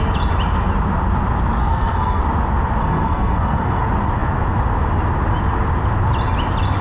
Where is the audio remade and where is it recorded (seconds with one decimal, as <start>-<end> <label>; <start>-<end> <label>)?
0.0-1.6 recorded; 1.6-2.2 remade; 2.2-2.8 recorded; 2.8-3.8 remade; 3.8-6.8 recorded